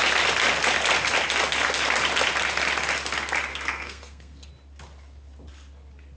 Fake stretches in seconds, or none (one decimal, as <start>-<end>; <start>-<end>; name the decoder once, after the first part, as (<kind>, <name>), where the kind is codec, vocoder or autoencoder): 3.5-4.5 (codec, SNAC)